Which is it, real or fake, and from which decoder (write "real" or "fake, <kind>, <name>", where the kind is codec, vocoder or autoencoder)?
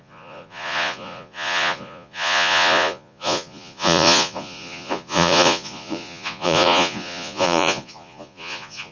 fake, vocoder, Vocos